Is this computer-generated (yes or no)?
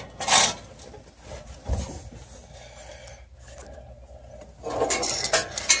no